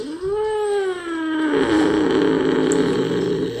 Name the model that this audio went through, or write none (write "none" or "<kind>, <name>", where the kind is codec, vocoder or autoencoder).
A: none